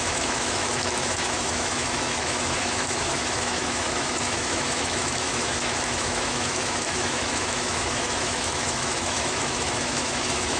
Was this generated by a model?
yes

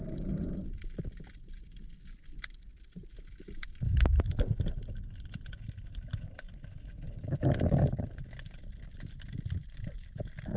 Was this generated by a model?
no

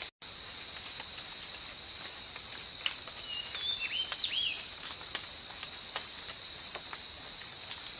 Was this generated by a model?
no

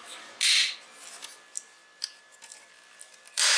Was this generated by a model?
no